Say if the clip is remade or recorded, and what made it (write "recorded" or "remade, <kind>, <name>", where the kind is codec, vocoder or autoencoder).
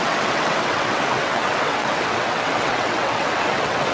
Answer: remade, vocoder, WaveNeXt